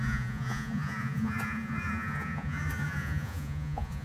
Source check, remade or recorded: remade